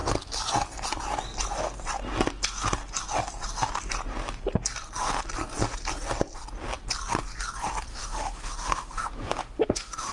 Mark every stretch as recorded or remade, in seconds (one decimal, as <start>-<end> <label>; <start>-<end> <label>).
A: 0.0-7.9 recorded; 7.9-10.1 remade